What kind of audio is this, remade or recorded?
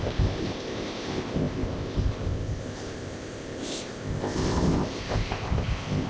remade